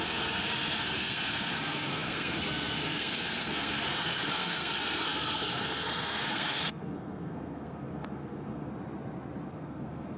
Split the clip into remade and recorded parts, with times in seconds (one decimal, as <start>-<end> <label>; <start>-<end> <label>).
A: 0.0-8.7 remade; 8.7-9.5 recorded; 9.5-10.2 remade